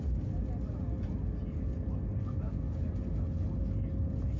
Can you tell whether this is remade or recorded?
recorded